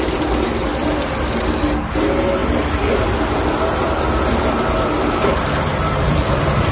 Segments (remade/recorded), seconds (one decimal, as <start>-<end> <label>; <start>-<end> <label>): 0.0-0.7 recorded; 0.7-1.4 remade; 1.4-2.4 recorded; 2.4-6.7 remade